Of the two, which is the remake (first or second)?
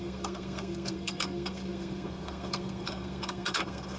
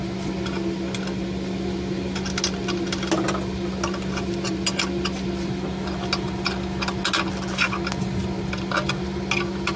first